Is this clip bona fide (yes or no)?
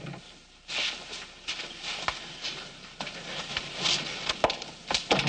yes